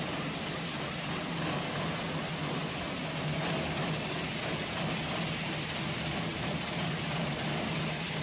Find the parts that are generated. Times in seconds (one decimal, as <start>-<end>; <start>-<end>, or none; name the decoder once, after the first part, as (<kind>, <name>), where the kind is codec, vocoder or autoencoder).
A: 6.3-7.0 (vocoder, BigVGAN v2)